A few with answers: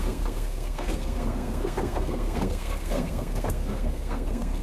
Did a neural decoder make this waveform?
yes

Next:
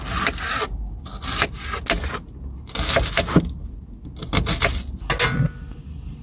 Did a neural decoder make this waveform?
no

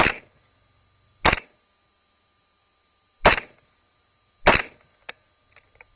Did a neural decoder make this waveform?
no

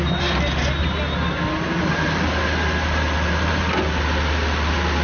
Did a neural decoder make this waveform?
no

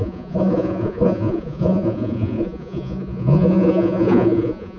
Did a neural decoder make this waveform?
yes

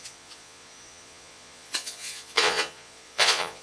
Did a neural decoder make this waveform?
yes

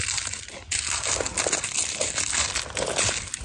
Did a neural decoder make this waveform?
no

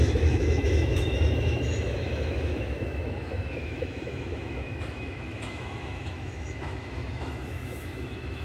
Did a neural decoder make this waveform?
yes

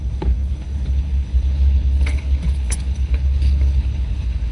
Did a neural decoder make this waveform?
yes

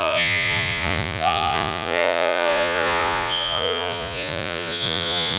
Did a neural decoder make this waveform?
yes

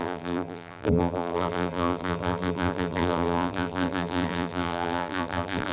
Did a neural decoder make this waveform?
yes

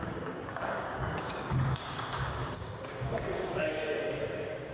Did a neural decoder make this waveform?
yes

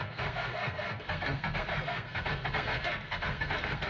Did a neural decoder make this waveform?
yes